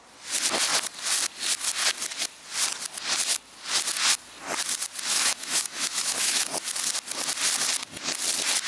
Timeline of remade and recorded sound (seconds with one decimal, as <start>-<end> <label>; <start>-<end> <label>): 0.0-5.1 recorded; 5.1-6.5 remade; 6.5-8.7 recorded